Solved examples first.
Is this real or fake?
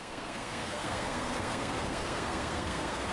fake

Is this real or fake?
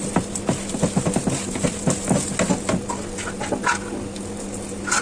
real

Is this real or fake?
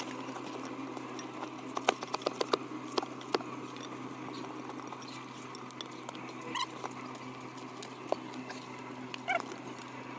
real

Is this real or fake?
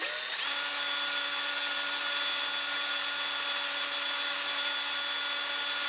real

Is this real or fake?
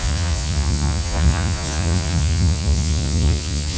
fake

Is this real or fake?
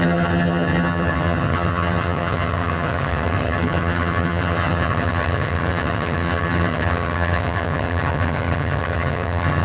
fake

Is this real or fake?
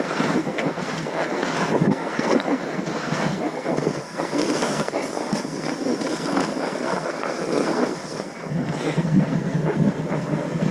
fake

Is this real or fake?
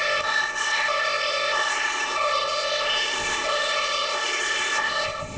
fake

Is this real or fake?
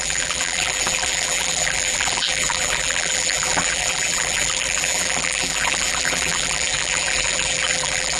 fake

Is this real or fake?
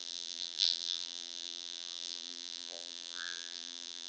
fake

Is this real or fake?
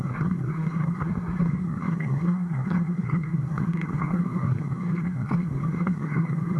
fake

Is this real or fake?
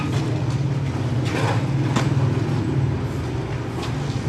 real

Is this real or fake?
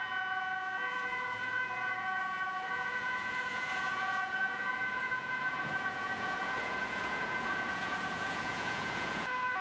fake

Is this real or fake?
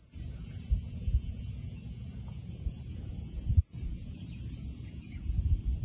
fake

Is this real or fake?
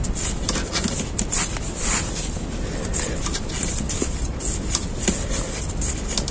real